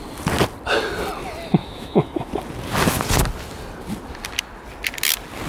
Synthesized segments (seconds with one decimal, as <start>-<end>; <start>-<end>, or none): 1.6-2.3